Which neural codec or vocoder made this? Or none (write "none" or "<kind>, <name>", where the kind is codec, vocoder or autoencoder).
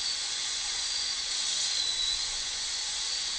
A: vocoder, Vocos